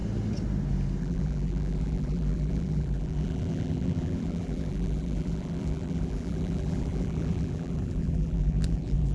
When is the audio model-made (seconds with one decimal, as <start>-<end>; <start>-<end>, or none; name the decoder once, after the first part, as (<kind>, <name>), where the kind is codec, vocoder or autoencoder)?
1.0-9.1 (vocoder, BigVGAN v2)